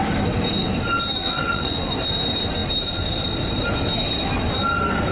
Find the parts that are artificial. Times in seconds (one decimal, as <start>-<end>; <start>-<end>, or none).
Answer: 1.2-1.9